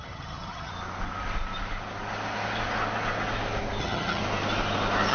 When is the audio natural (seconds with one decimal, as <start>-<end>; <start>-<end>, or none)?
0.7-3.8; 4.2-5.1